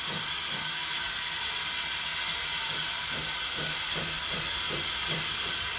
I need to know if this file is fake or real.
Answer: real